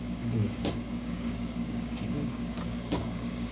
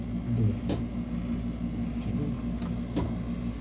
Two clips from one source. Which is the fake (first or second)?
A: first